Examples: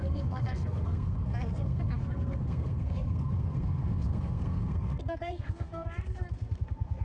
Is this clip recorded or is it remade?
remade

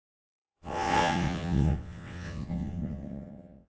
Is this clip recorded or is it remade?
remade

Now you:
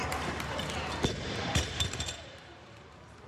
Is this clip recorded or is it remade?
remade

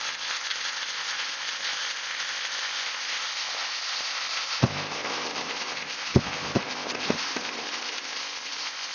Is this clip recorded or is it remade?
remade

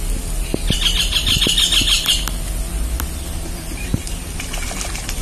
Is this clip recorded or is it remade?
recorded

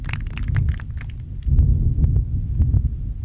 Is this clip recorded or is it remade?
recorded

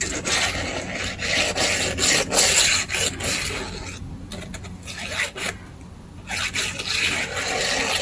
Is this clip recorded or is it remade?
recorded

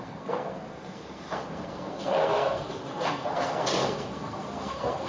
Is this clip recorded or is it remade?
remade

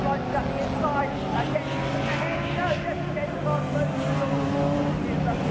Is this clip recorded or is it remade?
recorded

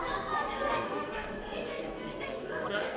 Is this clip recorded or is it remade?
remade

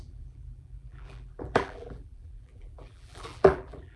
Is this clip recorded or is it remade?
remade